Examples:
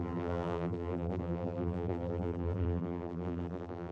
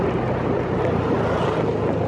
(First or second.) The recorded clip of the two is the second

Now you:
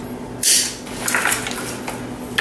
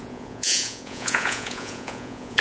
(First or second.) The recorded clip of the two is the first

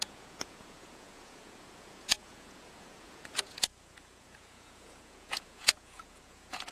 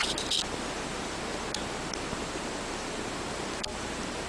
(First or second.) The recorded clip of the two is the second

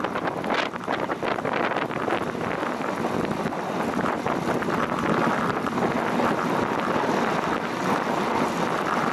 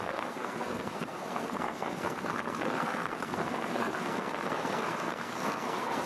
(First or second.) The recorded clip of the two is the first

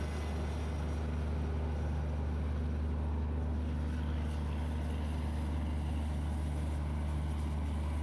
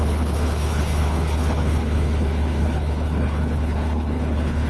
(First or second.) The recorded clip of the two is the first